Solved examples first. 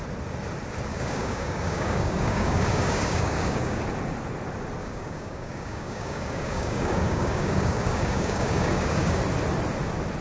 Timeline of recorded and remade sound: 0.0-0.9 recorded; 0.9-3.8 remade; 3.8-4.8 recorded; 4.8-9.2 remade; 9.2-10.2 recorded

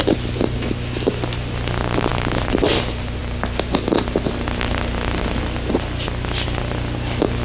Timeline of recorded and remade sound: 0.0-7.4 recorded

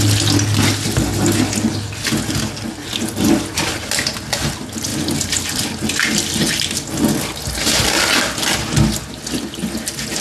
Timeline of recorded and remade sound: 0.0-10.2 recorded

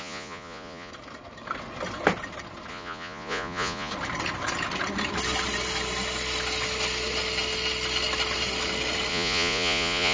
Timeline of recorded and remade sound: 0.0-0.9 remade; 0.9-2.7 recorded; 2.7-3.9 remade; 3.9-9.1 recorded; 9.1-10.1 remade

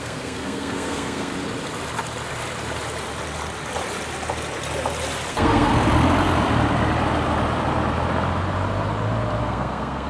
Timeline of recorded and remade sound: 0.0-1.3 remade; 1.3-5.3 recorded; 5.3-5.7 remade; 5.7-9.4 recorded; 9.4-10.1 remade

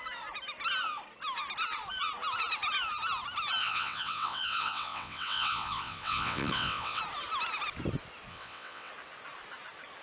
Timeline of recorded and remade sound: 0.0-3.6 recorded; 3.6-7.0 remade; 7.0-8.3 recorded; 8.3-8.9 remade; 8.9-10.0 recorded

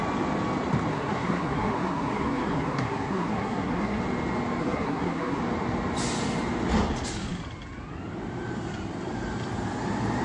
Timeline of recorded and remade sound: 0.0-0.9 recorded; 0.9-4.0 remade; 4.0-4.6 recorded; 4.6-5.4 remade; 5.4-10.2 recorded